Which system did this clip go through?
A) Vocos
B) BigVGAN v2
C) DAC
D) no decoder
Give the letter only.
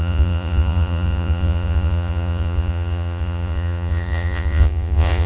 A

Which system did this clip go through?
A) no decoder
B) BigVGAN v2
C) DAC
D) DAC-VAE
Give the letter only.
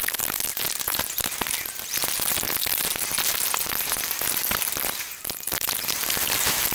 B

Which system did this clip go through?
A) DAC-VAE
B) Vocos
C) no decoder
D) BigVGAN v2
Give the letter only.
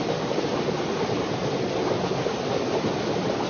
C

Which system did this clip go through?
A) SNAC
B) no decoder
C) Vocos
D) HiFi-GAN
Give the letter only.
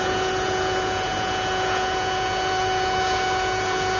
C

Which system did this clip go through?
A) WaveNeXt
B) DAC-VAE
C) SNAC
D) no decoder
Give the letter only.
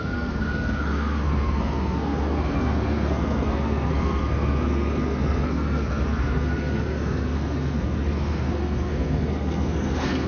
C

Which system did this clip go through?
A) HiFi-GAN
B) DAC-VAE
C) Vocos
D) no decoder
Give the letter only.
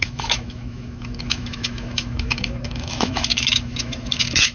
B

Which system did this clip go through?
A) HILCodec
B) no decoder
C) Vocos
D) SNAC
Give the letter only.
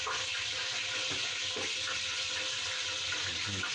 B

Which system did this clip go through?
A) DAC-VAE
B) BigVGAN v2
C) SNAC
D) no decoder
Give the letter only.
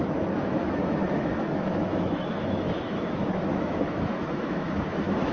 A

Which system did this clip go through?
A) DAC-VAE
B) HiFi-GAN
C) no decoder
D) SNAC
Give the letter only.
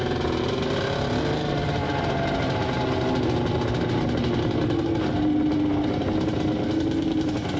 C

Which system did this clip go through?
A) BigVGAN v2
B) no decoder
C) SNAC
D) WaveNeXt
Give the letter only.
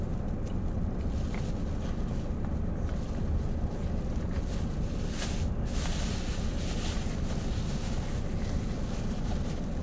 B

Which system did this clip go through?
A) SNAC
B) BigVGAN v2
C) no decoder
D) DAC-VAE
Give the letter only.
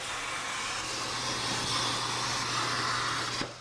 C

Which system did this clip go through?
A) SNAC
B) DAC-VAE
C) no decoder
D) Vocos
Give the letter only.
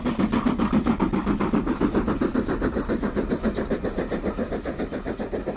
C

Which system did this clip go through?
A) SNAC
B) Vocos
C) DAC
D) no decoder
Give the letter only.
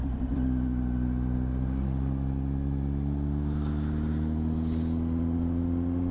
D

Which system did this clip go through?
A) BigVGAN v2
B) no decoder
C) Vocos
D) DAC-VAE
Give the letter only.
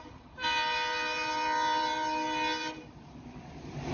A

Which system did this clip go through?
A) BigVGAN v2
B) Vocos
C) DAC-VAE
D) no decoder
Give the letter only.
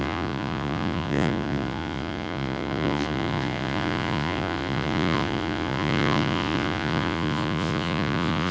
B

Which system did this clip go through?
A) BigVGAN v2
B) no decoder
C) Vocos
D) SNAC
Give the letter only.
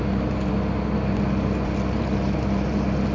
B